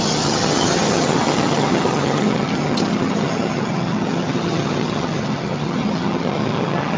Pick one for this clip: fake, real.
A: fake